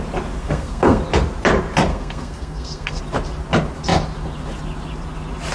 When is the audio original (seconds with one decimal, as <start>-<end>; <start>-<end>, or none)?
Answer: 0.0-0.4; 1.0-1.9; 3.0-5.5